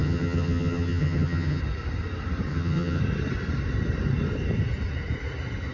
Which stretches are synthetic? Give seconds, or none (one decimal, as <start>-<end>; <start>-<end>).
0.0-1.6; 2.5-3.0